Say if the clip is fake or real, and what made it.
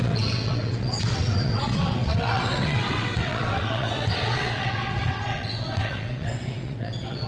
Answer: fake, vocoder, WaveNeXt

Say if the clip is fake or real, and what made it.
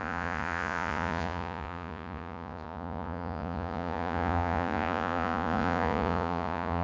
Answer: fake, vocoder, Vocos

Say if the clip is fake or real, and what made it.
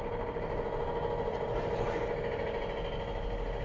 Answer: real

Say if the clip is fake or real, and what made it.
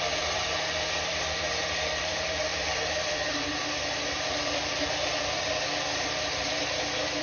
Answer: fake, vocoder, BigVGAN v2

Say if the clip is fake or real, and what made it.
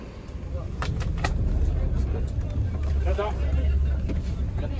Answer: real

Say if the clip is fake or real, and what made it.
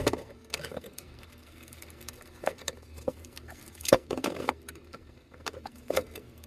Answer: fake, codec, SNAC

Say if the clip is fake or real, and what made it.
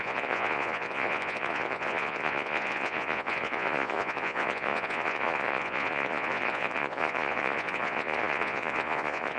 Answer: fake, vocoder, Vocos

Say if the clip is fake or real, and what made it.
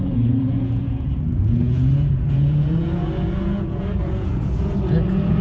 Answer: fake, vocoder, Vocos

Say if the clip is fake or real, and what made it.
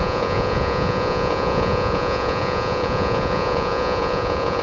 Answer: fake, vocoder, Vocos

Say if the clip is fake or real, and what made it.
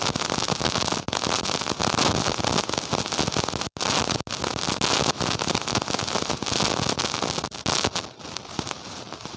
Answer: real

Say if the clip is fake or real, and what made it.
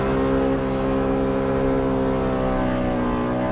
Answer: real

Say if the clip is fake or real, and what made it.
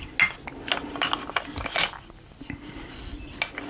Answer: real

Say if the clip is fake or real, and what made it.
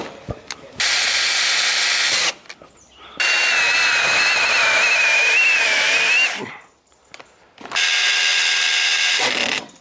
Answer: real